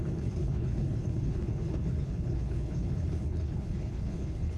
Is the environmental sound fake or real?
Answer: fake